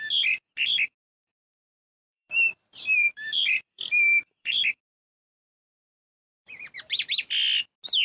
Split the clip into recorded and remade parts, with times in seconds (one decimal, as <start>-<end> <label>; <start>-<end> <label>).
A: 0.0-1.6 recorded; 1.6-4.5 remade; 4.5-5.7 recorded; 5.7-7.6 remade; 7.6-8.0 recorded

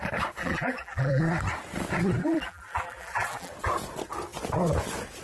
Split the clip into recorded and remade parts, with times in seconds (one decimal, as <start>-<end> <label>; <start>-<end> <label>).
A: 0.0-0.4 recorded; 0.4-1.2 remade; 1.2-2.2 recorded; 2.2-3.5 remade; 3.5-5.2 recorded

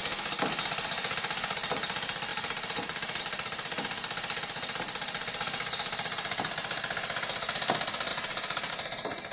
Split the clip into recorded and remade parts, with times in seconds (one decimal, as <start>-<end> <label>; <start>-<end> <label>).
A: 0.0-2.3 recorded; 2.3-3.2 remade; 3.2-8.1 recorded; 8.1-8.7 remade; 8.7-9.3 recorded

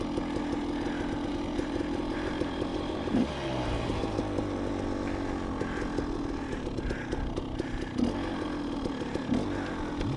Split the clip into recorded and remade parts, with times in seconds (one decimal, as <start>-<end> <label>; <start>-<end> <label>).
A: 0.0-1.3 recorded; 1.3-4.0 remade; 4.0-10.2 recorded

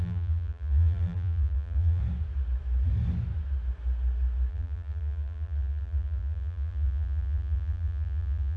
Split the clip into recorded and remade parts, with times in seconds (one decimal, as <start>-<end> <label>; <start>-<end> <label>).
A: 0.0-2.0 remade; 2.0-4.5 recorded; 4.5-8.6 remade

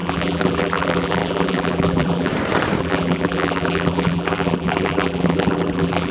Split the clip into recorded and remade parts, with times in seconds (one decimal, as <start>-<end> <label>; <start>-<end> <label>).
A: 0.0-2.3 remade; 2.3-2.8 recorded; 2.8-6.1 remade

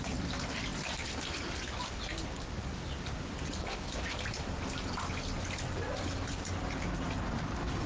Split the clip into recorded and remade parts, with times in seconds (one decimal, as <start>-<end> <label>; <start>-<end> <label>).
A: 0.0-2.6 recorded; 2.6-6.5 remade; 6.5-7.9 recorded

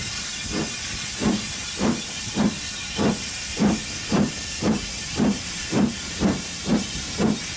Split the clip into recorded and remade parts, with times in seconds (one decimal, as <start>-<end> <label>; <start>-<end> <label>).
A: 0.0-1.6 recorded; 1.6-6.2 remade; 6.2-7.6 recorded